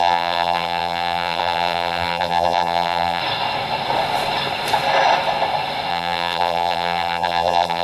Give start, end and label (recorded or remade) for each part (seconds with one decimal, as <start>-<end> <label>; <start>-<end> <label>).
0.0-3.2 remade; 3.2-5.9 recorded; 5.9-7.8 remade